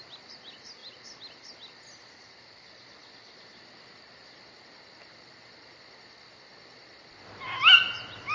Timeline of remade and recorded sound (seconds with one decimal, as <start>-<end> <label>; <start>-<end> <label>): 0.0-8.3 recorded

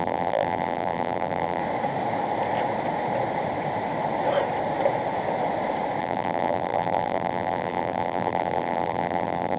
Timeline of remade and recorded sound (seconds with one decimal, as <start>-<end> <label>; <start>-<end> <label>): 0.0-1.6 remade; 1.6-6.0 recorded; 6.0-9.6 remade

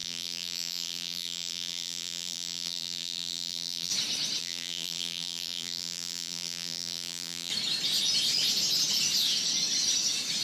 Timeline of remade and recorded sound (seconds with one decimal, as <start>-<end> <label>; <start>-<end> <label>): 0.0-3.9 remade; 3.9-4.4 recorded; 4.4-7.5 remade; 7.5-10.4 recorded

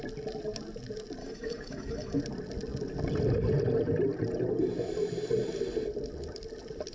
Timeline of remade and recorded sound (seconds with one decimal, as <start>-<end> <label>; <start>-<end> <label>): 0.0-1.2 recorded; 1.2-2.2 remade; 2.2-6.9 recorded